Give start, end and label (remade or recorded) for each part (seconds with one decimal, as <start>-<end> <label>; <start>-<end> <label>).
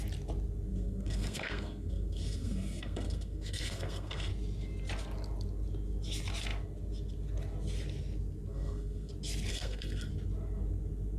0.0-0.7 recorded; 0.7-4.3 remade; 4.3-8.5 recorded; 8.5-9.1 remade; 9.1-9.5 recorded; 9.5-10.1 remade; 10.1-11.2 recorded